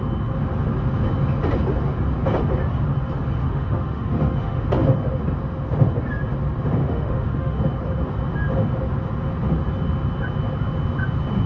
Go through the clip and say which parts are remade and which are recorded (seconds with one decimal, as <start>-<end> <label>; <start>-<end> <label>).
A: 0.0-3.4 recorded; 3.4-4.6 remade; 4.6-6.8 recorded; 6.8-7.6 remade; 7.6-11.5 recorded